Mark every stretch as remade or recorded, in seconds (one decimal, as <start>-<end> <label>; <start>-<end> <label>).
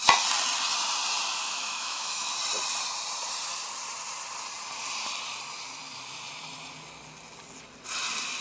0.0-1.4 recorded; 1.4-2.3 remade; 2.3-8.4 recorded